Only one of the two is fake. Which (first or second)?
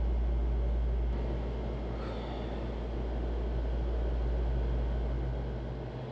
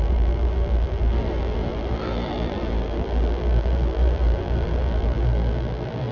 second